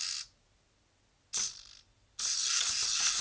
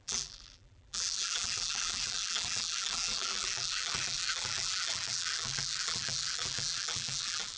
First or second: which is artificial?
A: second